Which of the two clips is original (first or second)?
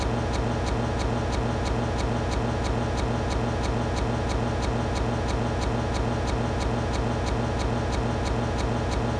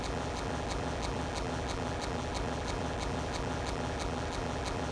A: first